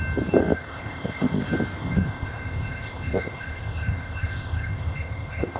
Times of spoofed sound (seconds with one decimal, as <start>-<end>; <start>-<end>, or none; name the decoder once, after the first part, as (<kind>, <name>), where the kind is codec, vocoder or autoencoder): 0.4-1.4 (codec, ZipCodec); 1.8-5.6